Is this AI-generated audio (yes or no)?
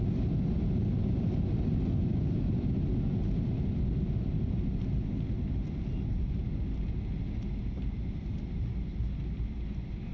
no